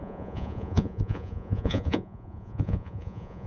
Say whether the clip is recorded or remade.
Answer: remade